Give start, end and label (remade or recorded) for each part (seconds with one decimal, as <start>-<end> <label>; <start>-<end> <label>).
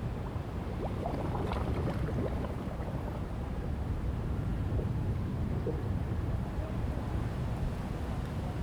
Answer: 0.0-1.5 remade; 1.5-2.3 recorded; 2.3-8.6 remade